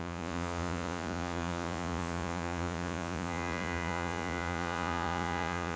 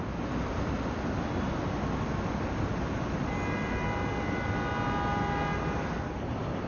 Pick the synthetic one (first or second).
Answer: first